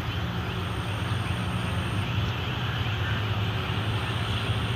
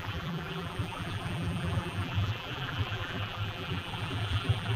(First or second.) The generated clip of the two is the second